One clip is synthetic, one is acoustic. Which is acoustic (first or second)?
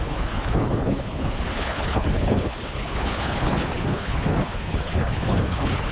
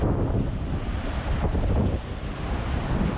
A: second